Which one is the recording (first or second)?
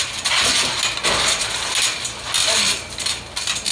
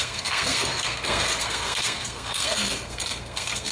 first